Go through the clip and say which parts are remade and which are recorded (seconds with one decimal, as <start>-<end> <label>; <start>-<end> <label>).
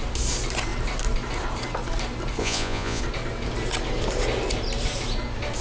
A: 0.0-2.4 recorded; 2.4-3.0 remade; 3.0-5.6 recorded